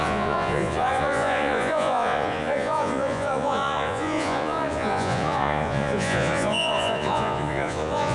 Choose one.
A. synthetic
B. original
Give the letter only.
A